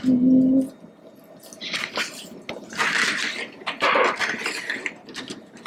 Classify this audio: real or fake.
real